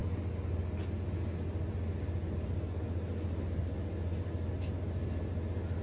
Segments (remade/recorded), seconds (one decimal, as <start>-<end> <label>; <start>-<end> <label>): 0.0-5.8 recorded